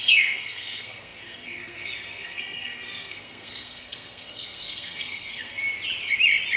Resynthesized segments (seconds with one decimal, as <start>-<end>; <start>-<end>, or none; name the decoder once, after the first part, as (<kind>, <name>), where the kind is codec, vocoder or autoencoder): 0.0-5.6 (codec, SNAC)